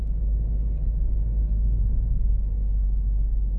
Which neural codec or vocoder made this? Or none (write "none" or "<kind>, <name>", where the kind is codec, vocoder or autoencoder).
none